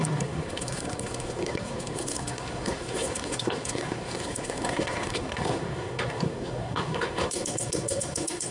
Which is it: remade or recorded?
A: remade